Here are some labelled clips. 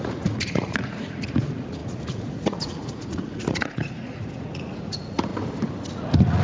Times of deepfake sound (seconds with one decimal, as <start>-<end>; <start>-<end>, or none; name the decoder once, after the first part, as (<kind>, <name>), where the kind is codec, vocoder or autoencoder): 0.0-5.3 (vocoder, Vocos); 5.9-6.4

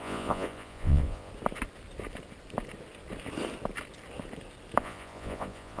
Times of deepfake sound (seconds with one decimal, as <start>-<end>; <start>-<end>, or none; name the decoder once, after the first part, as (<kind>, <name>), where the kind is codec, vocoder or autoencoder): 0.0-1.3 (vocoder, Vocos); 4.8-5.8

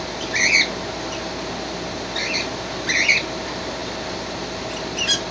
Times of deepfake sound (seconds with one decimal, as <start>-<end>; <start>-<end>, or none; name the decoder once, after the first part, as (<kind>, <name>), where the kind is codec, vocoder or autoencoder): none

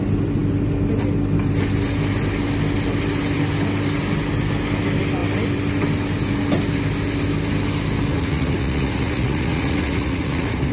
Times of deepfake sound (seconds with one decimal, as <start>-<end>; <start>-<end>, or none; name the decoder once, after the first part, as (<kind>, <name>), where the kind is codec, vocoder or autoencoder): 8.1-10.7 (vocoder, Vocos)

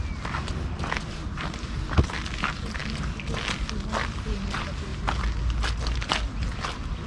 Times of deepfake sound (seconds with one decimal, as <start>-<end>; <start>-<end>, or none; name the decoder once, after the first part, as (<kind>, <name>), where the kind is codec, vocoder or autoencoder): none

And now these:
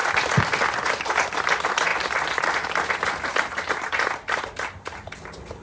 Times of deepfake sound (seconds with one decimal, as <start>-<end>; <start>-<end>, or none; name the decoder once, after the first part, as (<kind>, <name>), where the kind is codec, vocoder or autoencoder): none

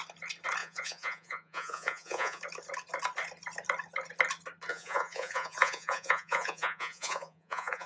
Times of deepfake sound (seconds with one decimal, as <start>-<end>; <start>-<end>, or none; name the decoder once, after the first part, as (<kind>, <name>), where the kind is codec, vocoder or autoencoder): 0.6-2.4 (vocoder, Vocos); 4.7-7.9

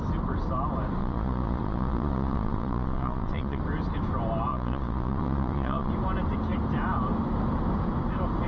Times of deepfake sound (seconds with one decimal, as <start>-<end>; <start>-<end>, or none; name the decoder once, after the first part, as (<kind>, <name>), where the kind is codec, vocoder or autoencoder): 1.0-3.6 (vocoder, Vocos); 4.5-5.9